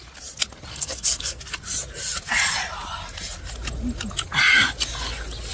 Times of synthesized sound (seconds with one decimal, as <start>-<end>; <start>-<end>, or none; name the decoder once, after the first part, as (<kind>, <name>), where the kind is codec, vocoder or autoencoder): 0.7-1.4 (codec, SNAC)